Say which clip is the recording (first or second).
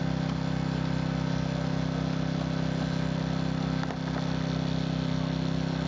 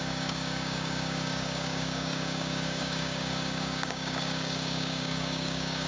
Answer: first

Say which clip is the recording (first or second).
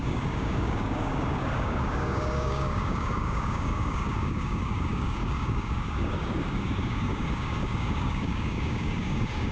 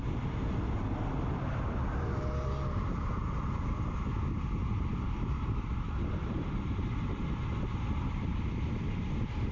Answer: second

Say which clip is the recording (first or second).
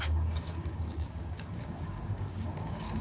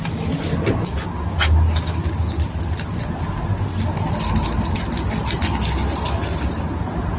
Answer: second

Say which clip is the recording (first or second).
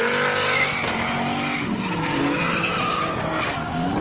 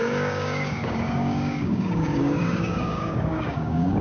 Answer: first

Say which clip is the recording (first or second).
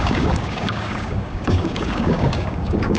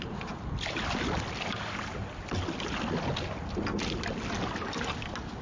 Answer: second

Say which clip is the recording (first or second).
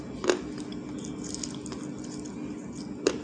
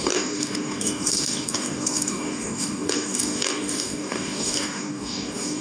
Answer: first